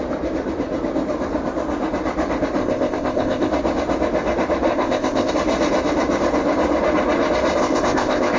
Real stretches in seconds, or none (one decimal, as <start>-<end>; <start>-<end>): 0.0-2.6; 3.5-4.7; 5.3-7.6